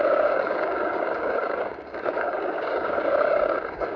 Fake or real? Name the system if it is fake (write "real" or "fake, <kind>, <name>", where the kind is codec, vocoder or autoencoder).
fake, codec, DAC